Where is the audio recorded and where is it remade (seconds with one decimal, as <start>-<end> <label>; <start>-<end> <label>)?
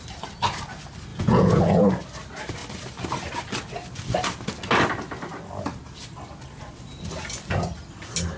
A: 0.0-1.1 recorded; 1.1-1.9 remade; 1.9-8.4 recorded